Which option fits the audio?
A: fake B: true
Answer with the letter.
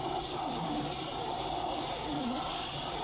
B